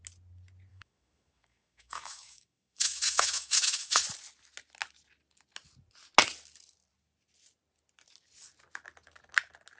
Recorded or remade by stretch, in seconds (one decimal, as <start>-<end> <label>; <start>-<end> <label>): 0.0-0.7 recorded; 0.7-4.0 remade; 4.0-9.8 recorded